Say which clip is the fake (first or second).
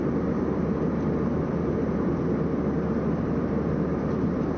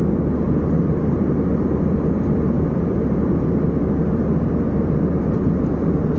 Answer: second